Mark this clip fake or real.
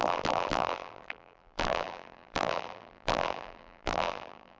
fake